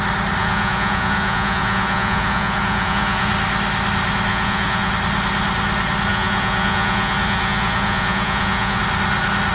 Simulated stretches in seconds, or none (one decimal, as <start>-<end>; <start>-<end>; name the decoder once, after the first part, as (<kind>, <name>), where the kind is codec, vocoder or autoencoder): 0.4-3.3 (vocoder, Vocos); 4.3-4.9; 6.1-8.8